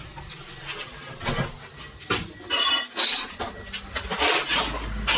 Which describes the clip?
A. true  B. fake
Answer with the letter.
A